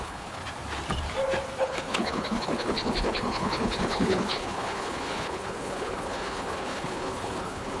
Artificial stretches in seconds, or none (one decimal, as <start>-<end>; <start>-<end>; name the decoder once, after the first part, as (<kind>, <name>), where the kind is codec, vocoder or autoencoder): 0.0-0.4 (codec, HILCodec); 1.6-7.8